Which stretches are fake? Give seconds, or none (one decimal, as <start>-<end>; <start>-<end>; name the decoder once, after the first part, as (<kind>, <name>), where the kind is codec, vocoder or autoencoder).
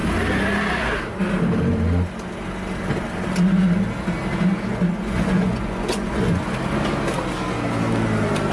4.7-6.4 (vocoder, Vocos)